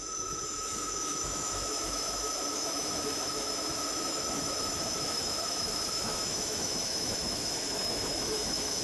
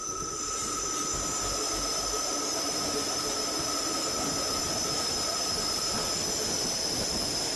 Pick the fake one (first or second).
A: first